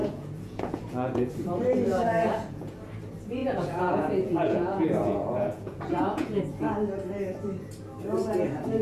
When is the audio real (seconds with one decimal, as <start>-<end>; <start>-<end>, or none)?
1.3-1.9; 2.8-3.4; 6.4-8.8